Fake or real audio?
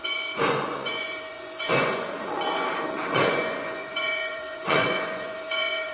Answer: fake